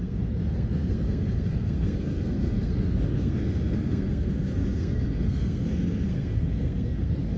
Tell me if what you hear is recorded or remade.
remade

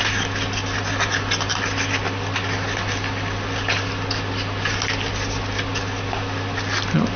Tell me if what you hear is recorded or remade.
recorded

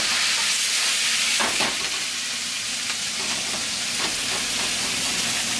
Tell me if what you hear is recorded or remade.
recorded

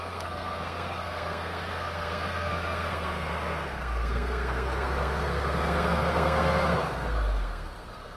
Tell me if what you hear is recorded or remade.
remade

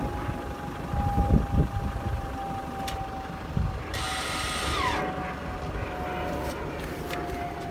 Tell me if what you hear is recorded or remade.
recorded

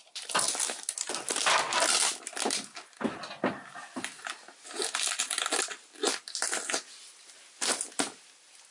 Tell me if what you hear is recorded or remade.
recorded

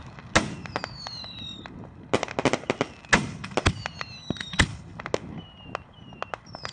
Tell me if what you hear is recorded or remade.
recorded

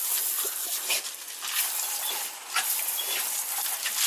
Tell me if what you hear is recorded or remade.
recorded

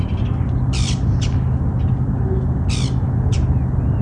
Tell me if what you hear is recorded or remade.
recorded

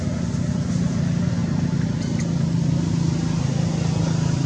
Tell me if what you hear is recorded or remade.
recorded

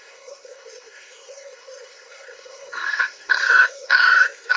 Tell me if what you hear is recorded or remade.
remade